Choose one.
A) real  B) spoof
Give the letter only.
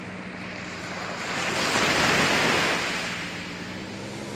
A